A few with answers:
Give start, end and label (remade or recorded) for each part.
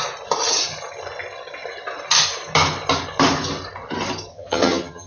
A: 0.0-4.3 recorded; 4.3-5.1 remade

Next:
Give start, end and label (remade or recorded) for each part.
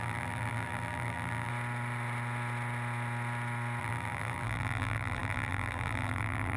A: 0.0-1.5 remade; 1.5-3.8 recorded; 3.8-6.6 remade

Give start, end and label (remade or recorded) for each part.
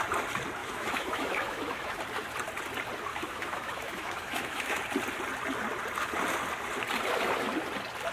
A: 0.0-0.6 recorded; 0.6-2.0 remade; 2.0-3.1 recorded; 3.1-4.8 remade; 4.8-8.1 recorded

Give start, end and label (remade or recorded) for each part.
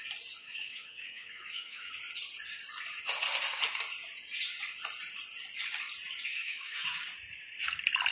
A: 0.0-0.4 recorded; 0.4-2.0 remade; 2.0-6.3 recorded; 6.3-7.0 remade; 7.0-8.1 recorded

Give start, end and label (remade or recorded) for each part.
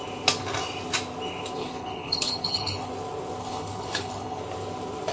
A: 0.0-1.6 recorded; 1.6-2.9 remade; 2.9-3.4 recorded; 3.4-4.4 remade; 4.4-5.1 recorded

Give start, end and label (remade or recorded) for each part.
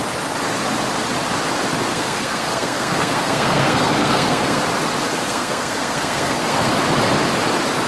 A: 0.0-1.9 recorded; 1.9-4.6 remade; 4.6-5.3 recorded; 5.3-6.7 remade; 6.7-7.9 recorded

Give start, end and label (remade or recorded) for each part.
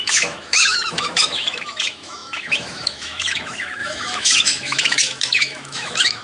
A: 0.0-6.2 remade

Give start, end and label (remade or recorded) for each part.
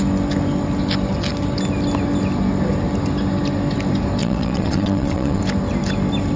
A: 0.0-4.2 recorded; 4.2-5.4 remade; 5.4-6.4 recorded